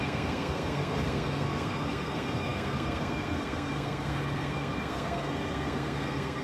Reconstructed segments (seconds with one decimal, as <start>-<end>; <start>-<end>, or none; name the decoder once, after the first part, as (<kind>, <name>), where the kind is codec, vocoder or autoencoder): 0.0-6.4 (codec, SNAC)